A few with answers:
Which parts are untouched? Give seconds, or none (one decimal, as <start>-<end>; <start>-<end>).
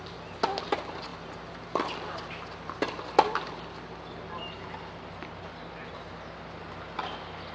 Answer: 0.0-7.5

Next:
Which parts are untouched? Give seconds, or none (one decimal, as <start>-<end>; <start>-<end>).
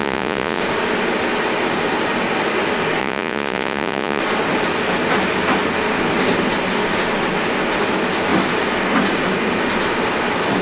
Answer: 0.6-3.0; 4.2-10.6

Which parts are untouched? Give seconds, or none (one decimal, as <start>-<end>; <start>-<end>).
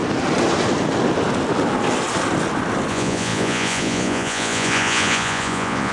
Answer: 0.0-2.9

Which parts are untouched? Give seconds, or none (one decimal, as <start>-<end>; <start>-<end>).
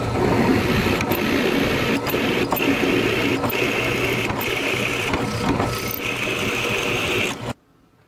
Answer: 0.0-8.1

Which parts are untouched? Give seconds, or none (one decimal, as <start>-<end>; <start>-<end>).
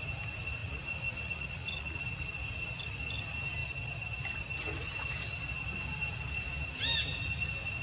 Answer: 0.0-0.6; 2.0-7.8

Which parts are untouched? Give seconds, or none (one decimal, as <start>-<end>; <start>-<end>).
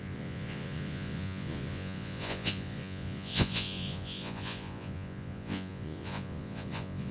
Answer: none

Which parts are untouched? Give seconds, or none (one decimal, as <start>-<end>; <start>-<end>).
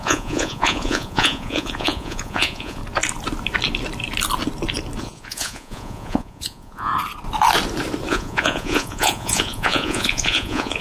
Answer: 2.8-5.0; 6.9-8.1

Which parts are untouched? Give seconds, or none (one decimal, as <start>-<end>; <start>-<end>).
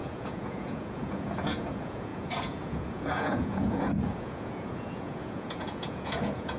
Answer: none